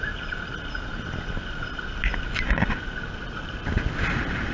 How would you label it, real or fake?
real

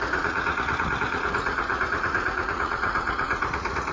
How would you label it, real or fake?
fake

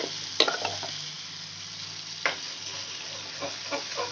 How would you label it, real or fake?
real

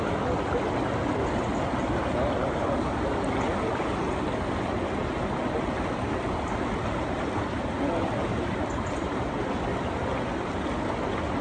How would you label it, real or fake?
real